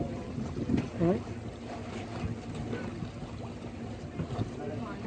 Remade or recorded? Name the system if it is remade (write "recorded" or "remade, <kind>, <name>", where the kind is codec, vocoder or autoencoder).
recorded